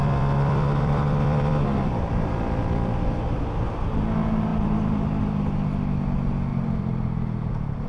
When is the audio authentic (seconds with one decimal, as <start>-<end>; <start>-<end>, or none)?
3.4-4.5; 5.2-6.5; 7.5-7.9

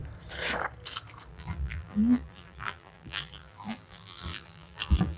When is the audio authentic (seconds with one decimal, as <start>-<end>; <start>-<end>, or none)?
0.0-1.3

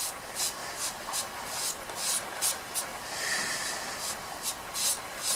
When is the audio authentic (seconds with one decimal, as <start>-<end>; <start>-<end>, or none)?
0.0-0.6; 1.2-2.9; 4.5-5.4